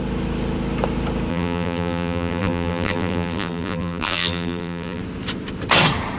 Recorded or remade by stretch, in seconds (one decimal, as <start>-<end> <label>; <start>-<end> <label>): 0.0-1.3 recorded; 1.3-5.0 remade; 5.0-6.2 recorded